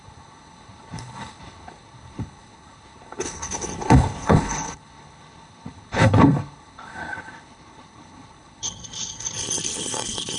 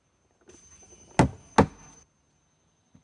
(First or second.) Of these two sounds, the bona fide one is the second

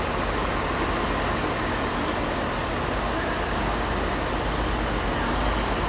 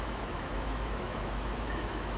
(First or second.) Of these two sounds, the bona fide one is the first